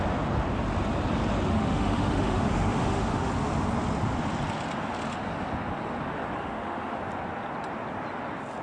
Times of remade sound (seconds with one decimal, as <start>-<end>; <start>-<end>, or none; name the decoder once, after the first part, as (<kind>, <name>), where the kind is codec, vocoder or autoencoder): 1.5-3.3 (autoencoder, DAC-VAE); 6.4-7.0